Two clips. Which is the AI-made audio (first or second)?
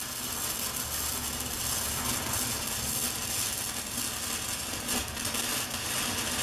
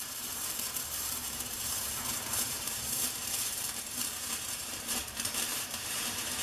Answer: second